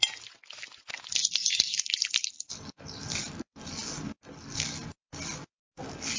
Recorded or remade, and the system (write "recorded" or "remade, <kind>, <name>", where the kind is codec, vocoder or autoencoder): recorded